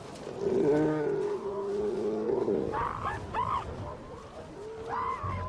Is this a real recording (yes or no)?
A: yes